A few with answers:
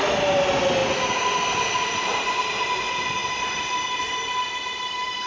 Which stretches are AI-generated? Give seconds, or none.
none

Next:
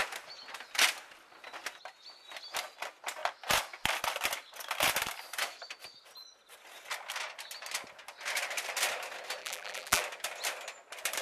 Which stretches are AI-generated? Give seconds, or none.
9.4-10.0 (vocoder, BigVGAN v2)